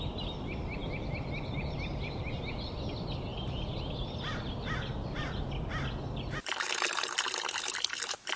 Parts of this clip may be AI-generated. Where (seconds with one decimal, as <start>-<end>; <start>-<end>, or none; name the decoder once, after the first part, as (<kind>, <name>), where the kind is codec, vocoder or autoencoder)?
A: none